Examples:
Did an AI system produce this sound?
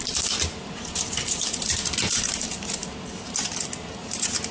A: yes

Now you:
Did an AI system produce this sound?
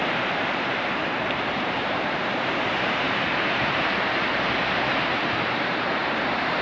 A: yes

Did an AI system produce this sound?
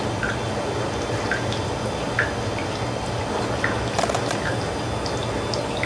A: no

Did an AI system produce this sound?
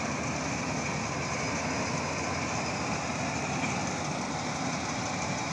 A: no